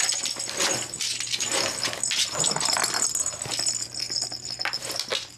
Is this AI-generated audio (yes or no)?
no